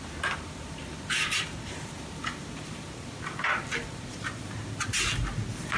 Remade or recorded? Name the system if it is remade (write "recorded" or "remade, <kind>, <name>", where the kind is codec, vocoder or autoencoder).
recorded